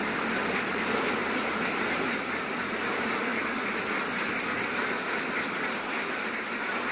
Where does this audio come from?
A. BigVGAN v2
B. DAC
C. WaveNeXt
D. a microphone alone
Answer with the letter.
D